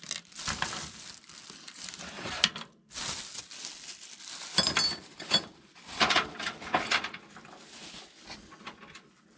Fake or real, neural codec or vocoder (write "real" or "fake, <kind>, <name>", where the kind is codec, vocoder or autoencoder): real